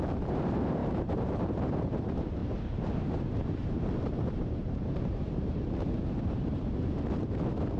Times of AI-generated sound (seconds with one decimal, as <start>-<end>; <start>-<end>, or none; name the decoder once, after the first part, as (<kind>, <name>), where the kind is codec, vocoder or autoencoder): 0.0-7.2 (vocoder, BigVGAN v2)